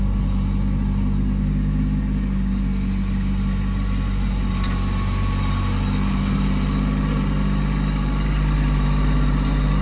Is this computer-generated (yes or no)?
no